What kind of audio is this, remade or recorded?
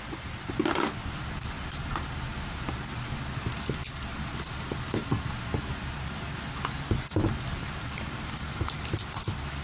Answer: recorded